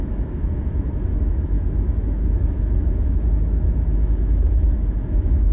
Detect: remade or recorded remade